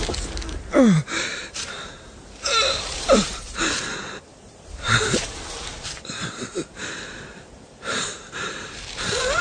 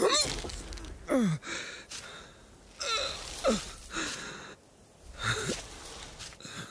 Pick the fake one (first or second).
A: first